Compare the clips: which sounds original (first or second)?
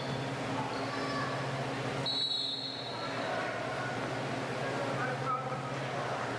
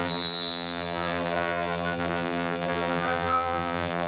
first